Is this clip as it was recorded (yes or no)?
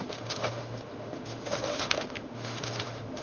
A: no